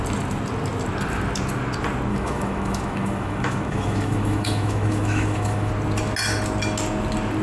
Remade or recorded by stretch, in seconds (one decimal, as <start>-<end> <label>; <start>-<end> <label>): 0.0-2.1 recorded; 2.1-5.7 remade; 5.7-7.4 recorded